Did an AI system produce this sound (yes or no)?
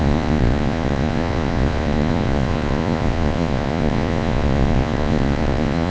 yes